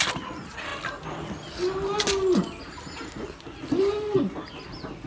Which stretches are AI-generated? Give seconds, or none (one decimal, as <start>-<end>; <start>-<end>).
none